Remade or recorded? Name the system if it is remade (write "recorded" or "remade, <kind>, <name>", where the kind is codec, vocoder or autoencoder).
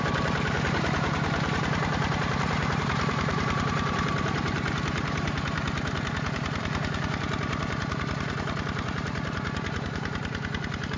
remade, vocoder, BigVGAN v2